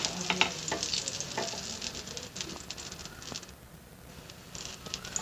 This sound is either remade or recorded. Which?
recorded